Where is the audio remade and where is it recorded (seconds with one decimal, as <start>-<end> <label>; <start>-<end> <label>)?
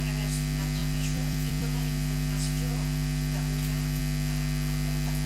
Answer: 0.0-0.8 recorded; 0.8-4.0 remade; 4.0-5.3 recorded